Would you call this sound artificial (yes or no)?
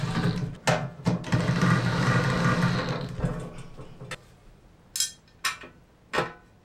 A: no